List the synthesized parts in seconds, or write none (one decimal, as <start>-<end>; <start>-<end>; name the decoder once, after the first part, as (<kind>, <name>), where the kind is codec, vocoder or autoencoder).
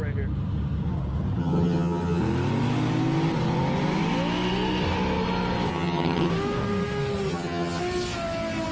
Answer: 1.4-2.2 (vocoder, HiFi-GAN); 5.7-6.3; 7.3-7.8